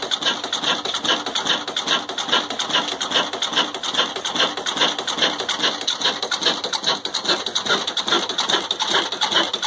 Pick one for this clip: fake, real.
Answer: real